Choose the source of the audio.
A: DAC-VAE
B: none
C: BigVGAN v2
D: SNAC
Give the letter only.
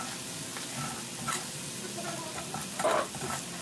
B